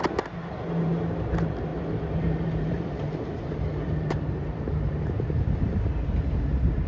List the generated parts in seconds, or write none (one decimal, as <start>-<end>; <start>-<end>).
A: 1.7-5.8